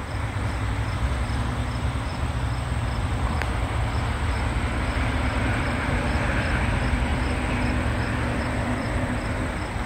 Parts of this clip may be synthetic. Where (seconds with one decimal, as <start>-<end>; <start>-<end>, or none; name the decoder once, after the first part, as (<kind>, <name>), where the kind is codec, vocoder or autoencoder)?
0.0-7.1 (vocoder, BigVGAN v2); 8.4-9.9